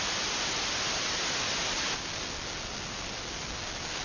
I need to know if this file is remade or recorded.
recorded